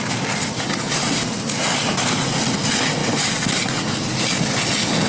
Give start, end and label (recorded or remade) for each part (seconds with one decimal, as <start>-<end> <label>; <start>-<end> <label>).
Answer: 0.0-5.1 recorded